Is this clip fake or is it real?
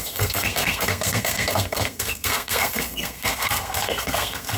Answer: fake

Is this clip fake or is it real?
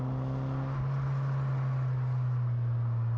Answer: real